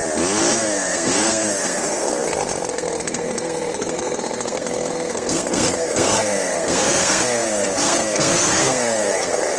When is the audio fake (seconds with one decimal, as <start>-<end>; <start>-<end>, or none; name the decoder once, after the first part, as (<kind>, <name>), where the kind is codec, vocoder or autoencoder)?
0.5-9.6 (codec, SNAC)